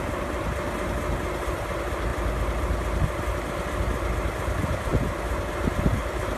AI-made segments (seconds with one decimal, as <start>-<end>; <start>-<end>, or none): none